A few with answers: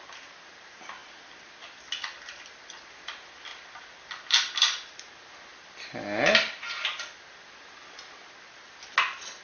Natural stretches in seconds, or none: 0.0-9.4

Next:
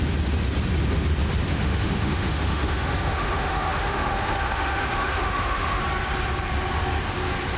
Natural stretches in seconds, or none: 0.0-1.5; 5.8-7.6

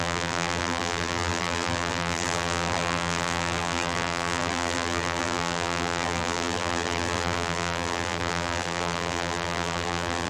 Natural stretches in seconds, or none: none

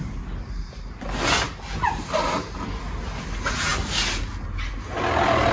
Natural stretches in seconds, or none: 0.0-5.5

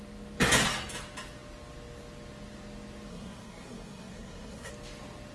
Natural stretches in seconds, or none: 0.0-3.1; 4.7-5.3

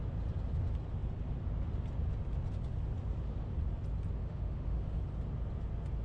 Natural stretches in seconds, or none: 0.0-4.2; 5.0-6.0